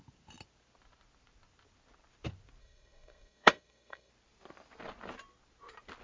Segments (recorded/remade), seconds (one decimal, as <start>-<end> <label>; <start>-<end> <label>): 0.0-2.6 recorded; 2.6-4.1 remade; 4.1-6.0 recorded